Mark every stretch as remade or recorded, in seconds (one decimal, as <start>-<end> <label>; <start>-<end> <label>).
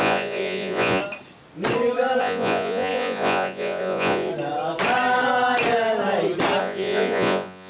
0.0-1.0 remade; 1.0-2.2 recorded; 2.2-4.3 remade; 4.3-6.6 recorded; 6.6-7.7 remade